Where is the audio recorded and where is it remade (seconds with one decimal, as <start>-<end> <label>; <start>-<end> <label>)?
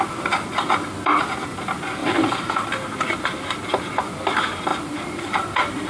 0.0-2.0 recorded; 2.0-4.0 remade; 4.0-4.7 recorded; 4.7-5.9 remade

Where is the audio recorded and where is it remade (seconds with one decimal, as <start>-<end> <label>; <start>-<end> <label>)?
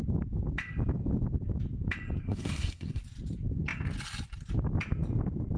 0.0-2.2 recorded; 2.2-3.0 remade; 3.0-5.6 recorded